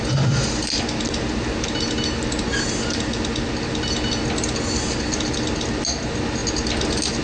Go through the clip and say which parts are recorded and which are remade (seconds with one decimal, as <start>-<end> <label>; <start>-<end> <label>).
0.0-7.2 recorded